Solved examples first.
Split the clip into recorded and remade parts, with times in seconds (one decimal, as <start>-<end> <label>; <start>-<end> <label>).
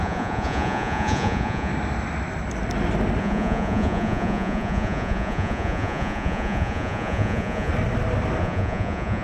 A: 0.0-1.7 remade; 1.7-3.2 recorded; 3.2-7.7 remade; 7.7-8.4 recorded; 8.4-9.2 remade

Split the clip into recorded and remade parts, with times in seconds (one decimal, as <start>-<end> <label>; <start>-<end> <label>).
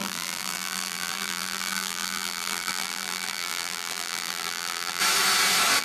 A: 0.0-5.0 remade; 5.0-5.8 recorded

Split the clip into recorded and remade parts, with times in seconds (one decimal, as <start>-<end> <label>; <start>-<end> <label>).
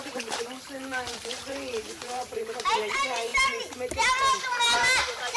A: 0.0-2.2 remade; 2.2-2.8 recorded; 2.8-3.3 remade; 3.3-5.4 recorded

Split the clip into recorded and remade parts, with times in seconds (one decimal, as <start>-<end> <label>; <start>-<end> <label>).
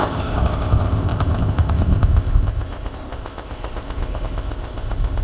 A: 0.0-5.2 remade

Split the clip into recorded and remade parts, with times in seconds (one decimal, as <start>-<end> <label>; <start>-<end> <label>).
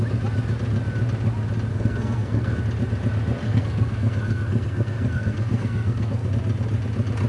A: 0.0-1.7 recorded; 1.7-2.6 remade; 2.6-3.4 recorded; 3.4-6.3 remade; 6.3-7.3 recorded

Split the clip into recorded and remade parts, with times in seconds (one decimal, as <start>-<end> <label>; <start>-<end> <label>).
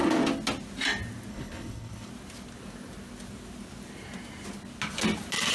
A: 0.0-1.3 recorded; 1.3-2.1 remade; 2.1-5.5 recorded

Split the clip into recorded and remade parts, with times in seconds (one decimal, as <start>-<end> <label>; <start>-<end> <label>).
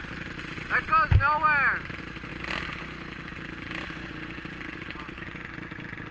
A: 0.0-6.1 recorded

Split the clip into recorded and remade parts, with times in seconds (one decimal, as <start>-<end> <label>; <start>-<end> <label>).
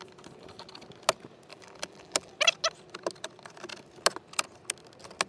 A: 0.0-1.5 recorded; 1.5-2.3 remade; 2.3-5.3 recorded